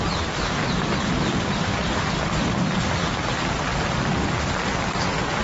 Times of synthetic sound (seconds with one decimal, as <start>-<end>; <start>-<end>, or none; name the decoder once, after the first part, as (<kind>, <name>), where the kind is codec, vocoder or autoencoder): none

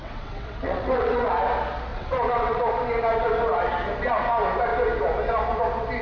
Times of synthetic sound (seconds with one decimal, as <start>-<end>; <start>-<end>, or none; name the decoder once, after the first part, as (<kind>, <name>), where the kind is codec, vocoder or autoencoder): 0.0-1.3 (vocoder, WaveNeXt); 1.9-2.7

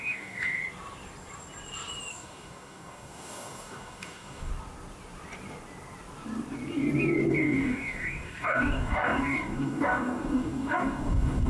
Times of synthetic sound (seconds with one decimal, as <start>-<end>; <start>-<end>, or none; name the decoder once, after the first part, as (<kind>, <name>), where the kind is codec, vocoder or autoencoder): 0.0-0.6 (codec, DAC); 2.1-4.5; 7.3-11.5

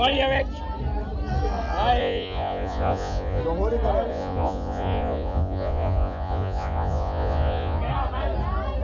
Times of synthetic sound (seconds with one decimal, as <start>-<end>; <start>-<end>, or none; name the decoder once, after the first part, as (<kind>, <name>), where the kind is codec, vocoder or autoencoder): 2.0-3.4 (vocoder, Vocos); 4.1-7.8

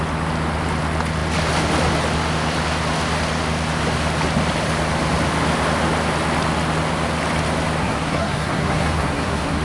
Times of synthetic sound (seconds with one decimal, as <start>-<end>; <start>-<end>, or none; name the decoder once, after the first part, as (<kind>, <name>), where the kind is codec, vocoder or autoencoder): 7.8-9.6 (codec, SNAC)